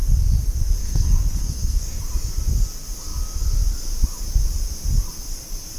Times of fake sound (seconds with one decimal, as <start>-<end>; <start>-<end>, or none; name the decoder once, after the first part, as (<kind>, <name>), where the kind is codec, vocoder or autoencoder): 0.8-2.0 (codec, SNAC)